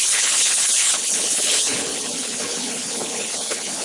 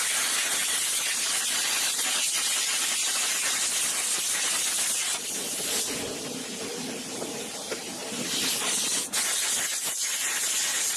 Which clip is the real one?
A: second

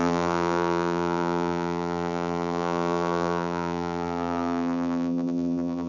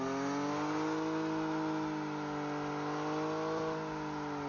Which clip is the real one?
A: second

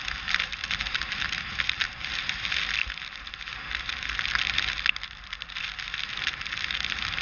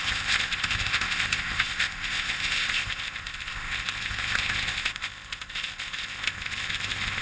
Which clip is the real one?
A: first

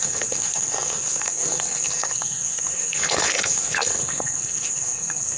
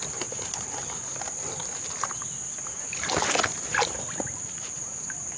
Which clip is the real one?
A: second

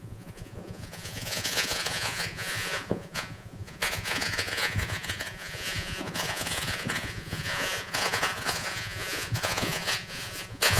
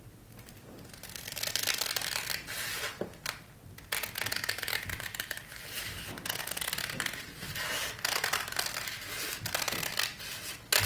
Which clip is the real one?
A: second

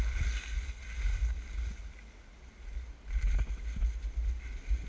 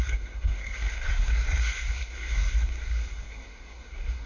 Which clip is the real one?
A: first